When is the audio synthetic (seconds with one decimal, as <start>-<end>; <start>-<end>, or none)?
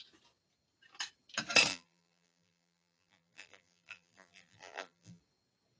1.7-5.2